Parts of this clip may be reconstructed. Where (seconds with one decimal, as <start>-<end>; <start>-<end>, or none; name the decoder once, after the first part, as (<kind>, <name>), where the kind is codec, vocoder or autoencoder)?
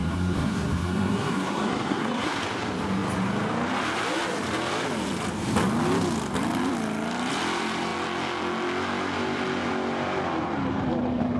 0.0-2.4 (codec, SNAC)